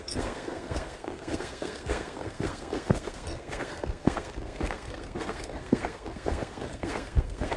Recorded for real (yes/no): no